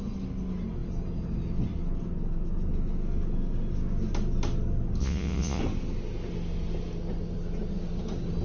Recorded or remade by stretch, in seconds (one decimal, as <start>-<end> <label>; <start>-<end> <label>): 0.0-5.0 recorded; 5.0-5.6 remade; 5.6-8.4 recorded